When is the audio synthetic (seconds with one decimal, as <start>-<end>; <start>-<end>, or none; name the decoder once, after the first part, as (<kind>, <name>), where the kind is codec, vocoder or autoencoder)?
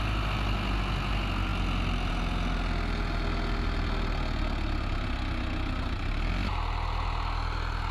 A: none